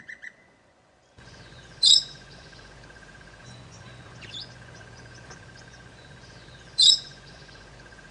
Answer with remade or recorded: remade